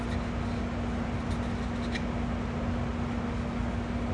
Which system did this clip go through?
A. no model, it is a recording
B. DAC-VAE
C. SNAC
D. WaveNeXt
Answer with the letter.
A